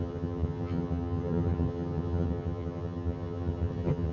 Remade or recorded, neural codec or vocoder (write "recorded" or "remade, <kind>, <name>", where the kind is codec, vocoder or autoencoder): remade, vocoder, HiFi-GAN